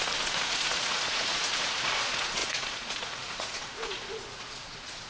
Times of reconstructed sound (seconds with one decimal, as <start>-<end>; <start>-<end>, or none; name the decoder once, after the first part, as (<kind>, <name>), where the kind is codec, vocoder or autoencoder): 0.0-5.1 (vocoder, Vocos)